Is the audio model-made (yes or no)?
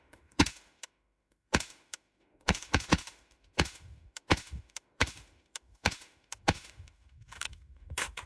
yes